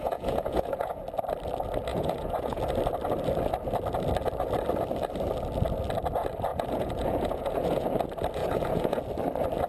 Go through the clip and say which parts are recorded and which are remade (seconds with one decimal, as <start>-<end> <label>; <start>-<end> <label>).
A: 0.0-1.0 remade; 1.0-1.9 recorded; 1.9-2.6 remade; 2.6-6.5 recorded; 6.5-7.9 remade; 7.9-8.4 recorded; 8.4-9.0 remade; 9.0-9.7 recorded